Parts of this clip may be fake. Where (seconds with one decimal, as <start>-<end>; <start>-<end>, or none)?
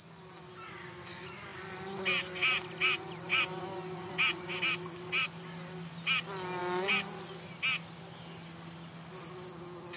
none